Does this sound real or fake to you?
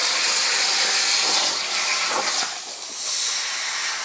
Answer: real